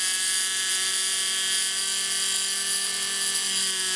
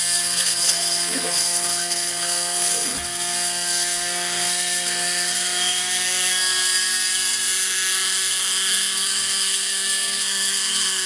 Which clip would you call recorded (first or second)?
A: first